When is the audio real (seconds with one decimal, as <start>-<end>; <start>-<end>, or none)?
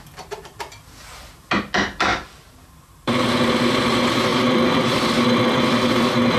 0.0-2.1; 3.2-4.3; 5.0-6.4